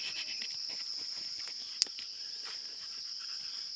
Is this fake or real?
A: real